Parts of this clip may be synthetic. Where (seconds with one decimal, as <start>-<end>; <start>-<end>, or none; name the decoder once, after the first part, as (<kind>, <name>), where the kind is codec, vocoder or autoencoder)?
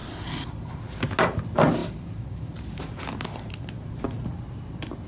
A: 0.0-0.9 (vocoder, BigVGAN v2); 1.8-2.8